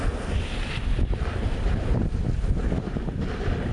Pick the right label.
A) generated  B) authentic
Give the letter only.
B